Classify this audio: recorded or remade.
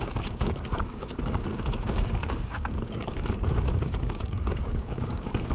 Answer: remade